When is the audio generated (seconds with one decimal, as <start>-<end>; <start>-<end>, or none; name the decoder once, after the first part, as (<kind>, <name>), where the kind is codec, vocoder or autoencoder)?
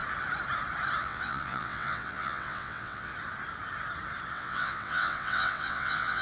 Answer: 1.0-3.1 (vocoder, WaveNeXt); 4.3-6.2